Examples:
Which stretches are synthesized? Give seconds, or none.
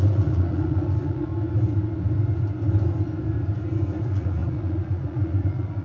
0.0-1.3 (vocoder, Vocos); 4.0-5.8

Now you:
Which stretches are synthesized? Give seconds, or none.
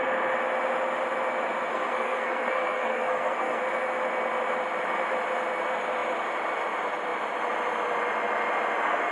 1.7-3.6 (codec, SNAC)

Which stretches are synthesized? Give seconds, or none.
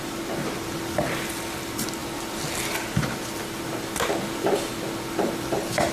none